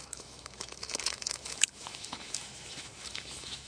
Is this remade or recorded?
remade